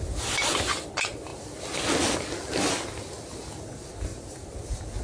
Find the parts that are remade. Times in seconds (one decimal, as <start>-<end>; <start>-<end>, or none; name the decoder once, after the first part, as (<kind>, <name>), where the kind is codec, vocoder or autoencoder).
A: none